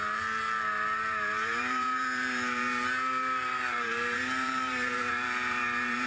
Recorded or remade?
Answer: remade